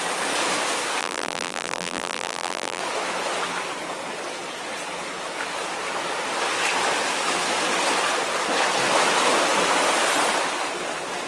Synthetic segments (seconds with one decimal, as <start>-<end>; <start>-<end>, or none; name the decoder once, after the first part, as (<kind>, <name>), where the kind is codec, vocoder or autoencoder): 1.0-2.8 (vocoder, BigVGAN v2)